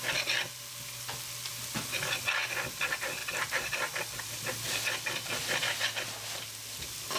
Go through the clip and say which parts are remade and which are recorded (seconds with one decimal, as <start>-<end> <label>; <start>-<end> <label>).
0.0-3.2 recorded; 3.2-5.6 remade; 5.6-7.2 recorded